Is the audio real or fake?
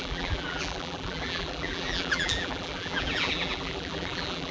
fake